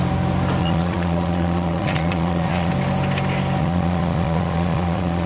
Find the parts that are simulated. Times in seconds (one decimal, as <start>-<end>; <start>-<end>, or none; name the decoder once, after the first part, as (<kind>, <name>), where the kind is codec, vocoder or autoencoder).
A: 0.6-2.7 (vocoder, Vocos); 3.6-5.3